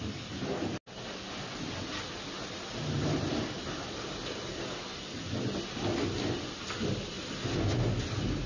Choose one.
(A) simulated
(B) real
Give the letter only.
B